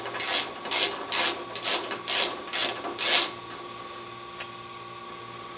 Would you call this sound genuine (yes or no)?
yes